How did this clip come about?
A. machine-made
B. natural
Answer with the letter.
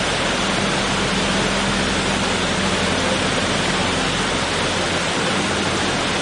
B